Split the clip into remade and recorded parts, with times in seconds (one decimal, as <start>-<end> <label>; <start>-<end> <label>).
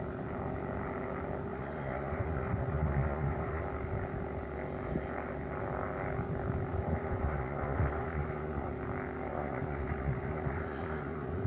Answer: 0.0-1.5 recorded; 1.5-3.6 remade; 3.6-6.7 recorded; 6.7-8.7 remade; 8.7-9.3 recorded; 9.3-11.5 remade